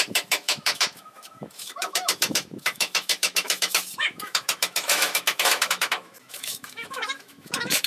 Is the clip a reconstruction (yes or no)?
yes